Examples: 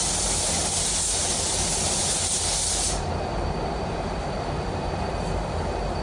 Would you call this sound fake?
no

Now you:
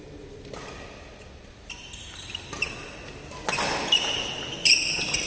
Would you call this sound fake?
no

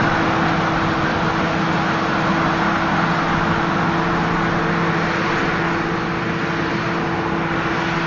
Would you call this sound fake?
no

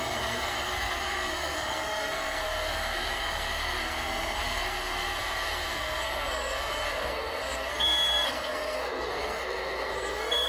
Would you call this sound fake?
yes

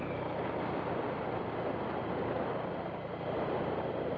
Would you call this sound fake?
no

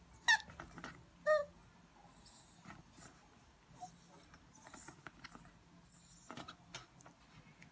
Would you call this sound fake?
no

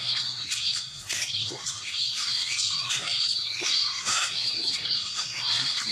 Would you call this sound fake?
yes